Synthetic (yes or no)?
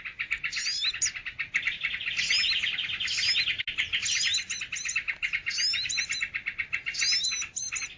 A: no